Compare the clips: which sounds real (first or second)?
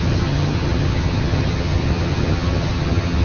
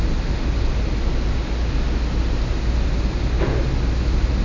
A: second